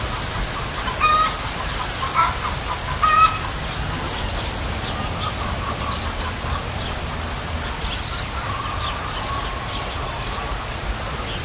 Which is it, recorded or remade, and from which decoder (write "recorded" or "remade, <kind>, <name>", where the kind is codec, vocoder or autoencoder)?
recorded